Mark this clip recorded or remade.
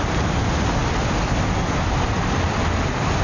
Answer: recorded